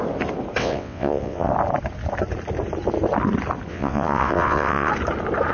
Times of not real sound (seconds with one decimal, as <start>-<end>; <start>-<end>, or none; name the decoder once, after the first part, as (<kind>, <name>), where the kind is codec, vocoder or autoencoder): 0.6-1.5 (vocoder, WaveNeXt); 3.7-4.9